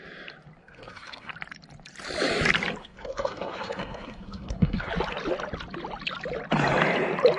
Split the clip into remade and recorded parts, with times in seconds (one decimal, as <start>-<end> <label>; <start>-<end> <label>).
0.0-0.6 recorded; 0.6-1.3 remade; 1.3-2.8 recorded; 2.8-4.9 remade; 4.9-7.4 recorded